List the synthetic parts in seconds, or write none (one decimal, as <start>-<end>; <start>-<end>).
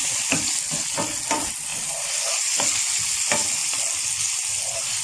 none